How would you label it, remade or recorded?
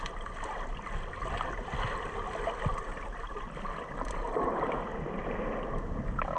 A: recorded